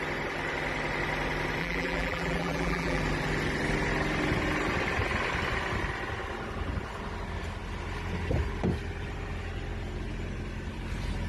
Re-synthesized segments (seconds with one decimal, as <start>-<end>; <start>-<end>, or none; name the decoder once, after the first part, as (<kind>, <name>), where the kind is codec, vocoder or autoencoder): 1.6-3.0 (vocoder, BigVGAN v2)